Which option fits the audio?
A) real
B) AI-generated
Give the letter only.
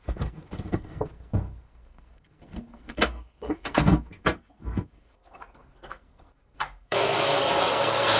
B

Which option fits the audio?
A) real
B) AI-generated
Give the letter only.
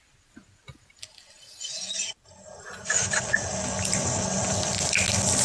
A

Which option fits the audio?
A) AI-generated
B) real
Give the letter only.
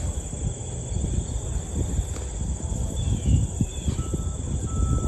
B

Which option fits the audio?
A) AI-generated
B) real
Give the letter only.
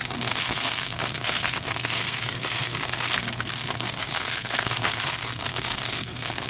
A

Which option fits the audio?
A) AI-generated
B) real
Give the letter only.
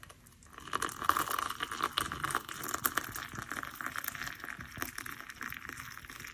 B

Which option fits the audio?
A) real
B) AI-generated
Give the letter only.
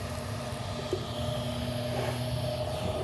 A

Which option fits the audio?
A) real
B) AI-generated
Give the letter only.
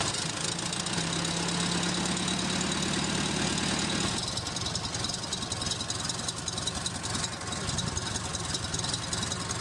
A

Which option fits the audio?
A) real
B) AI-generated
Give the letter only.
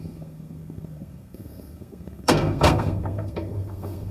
B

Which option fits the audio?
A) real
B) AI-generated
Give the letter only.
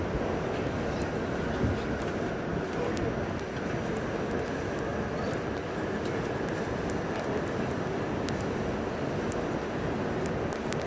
A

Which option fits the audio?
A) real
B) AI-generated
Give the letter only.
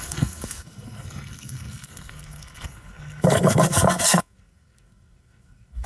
B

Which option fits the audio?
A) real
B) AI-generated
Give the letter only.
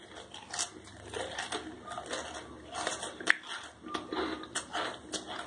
A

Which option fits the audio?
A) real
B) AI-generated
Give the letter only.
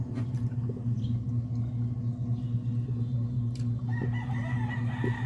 A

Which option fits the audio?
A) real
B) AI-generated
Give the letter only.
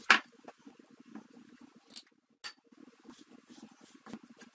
A